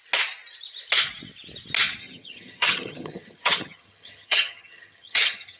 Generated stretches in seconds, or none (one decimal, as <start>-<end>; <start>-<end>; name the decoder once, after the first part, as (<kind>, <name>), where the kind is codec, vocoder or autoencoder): 2.0-5.6 (vocoder, HiFi-GAN)